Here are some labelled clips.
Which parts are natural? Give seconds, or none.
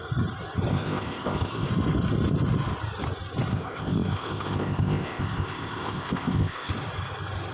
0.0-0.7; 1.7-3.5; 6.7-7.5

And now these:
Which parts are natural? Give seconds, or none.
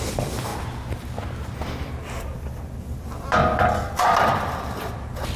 0.5-2.8; 3.4-4.2